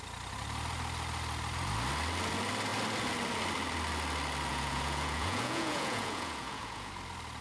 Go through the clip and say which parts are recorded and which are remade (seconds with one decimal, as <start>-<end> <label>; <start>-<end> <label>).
0.0-4.5 recorded; 4.5-6.9 remade; 6.9-7.4 recorded